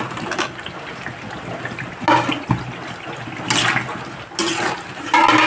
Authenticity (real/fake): real